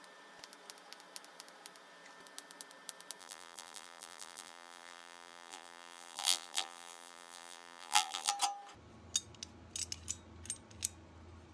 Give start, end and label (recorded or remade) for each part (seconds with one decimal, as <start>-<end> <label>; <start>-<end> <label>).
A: 0.0-3.2 recorded; 3.2-8.3 remade; 8.3-11.5 recorded